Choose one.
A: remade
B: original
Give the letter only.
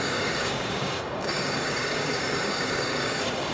A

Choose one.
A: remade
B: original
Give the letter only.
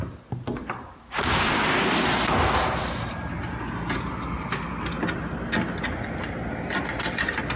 B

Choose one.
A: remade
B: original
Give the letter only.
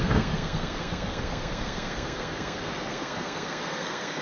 A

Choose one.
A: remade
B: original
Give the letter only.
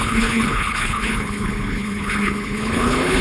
A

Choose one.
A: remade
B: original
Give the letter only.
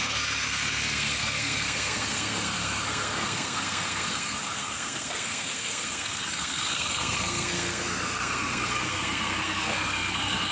A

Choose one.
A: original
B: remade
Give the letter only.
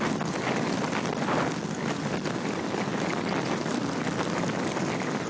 A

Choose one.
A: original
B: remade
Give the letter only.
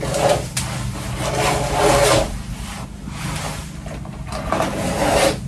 A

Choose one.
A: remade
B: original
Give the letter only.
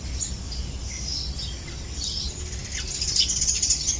B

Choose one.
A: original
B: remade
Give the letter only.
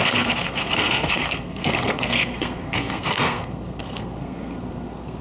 B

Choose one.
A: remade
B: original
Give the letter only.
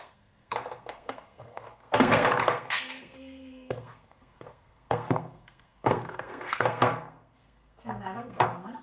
A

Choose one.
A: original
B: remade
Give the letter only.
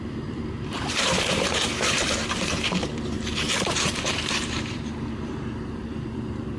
B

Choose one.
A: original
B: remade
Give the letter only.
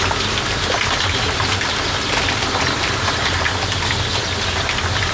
A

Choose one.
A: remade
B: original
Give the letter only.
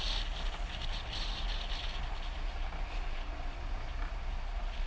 B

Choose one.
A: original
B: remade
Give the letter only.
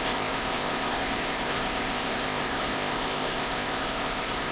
B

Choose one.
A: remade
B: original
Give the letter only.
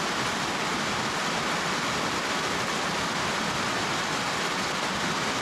B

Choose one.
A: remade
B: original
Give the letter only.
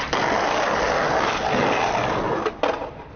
B